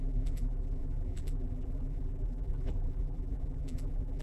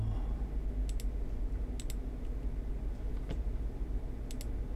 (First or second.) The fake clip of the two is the first